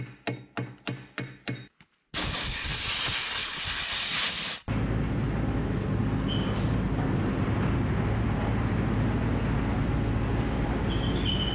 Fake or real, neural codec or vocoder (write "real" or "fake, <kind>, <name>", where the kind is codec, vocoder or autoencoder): real